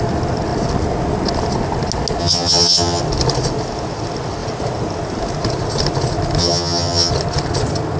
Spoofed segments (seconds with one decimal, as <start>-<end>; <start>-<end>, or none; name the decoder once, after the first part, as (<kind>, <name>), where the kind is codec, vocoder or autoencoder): 2.2-3.0 (vocoder, HiFi-GAN); 6.4-7.1